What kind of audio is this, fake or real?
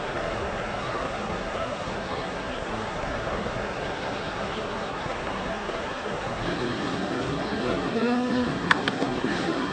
fake